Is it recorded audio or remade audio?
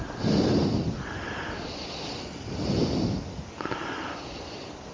remade